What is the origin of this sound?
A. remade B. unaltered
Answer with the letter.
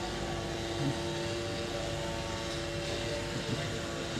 B